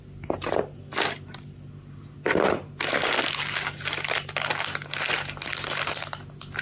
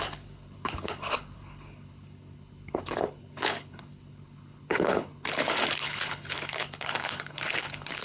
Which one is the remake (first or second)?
second